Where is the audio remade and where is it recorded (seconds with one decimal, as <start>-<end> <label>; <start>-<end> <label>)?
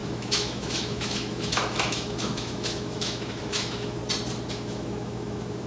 0.0-4.0 remade; 4.0-4.5 recorded; 4.5-5.7 remade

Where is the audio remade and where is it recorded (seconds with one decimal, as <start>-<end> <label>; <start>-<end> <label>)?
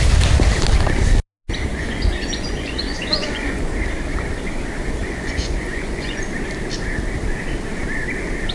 0.0-1.7 recorded; 1.7-3.7 remade; 3.7-5.0 recorded; 5.0-6.2 remade; 6.2-8.5 recorded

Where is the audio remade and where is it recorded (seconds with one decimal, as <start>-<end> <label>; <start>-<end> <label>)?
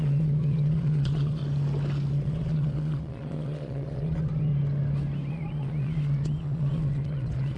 0.0-1.4 remade; 1.4-2.1 recorded; 2.1-4.5 remade; 4.5-5.3 recorded; 5.3-7.6 remade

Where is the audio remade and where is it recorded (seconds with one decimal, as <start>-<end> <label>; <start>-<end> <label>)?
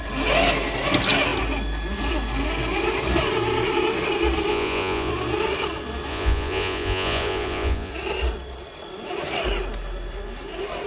0.0-4.5 recorded; 4.5-5.1 remade; 5.1-6.1 recorded; 6.1-7.9 remade; 7.9-10.9 recorded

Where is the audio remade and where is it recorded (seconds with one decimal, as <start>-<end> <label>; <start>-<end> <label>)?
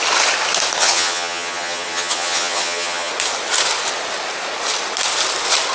0.0-0.8 recorded; 0.8-3.1 remade; 3.1-5.7 recorded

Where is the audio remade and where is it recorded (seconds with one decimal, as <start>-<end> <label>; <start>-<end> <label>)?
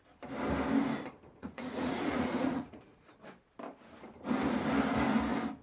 0.0-1.3 recorded; 1.3-3.1 remade; 3.1-5.6 recorded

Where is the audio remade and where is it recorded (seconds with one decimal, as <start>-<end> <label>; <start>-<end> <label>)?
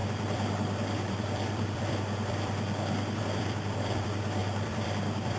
0.0-5.4 remade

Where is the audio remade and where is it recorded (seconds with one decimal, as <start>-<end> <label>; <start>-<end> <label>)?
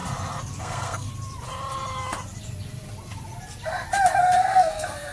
0.0-0.6 recorded; 0.6-1.1 remade; 1.1-4.2 recorded; 4.2-5.1 remade